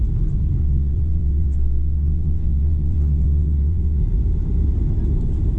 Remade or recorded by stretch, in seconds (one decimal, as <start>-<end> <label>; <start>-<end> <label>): 0.0-0.6 recorded; 0.6-4.0 remade; 4.0-5.6 recorded